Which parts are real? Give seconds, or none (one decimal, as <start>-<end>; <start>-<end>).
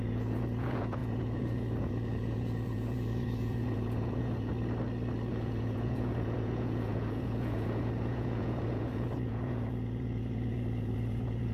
4.5-5.3